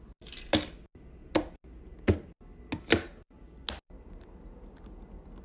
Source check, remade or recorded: recorded